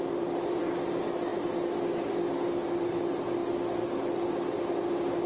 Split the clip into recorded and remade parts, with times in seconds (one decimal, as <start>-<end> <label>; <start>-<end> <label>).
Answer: 0.0-5.3 recorded